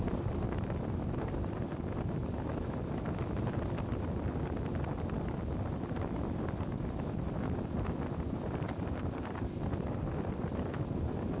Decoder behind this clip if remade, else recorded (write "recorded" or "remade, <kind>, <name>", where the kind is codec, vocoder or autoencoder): recorded